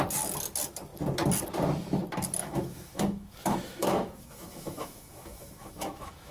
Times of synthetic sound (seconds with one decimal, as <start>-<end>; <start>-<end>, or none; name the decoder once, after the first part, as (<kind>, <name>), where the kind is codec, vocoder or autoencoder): 2.4-6.3 (autoencoder, DAC-VAE)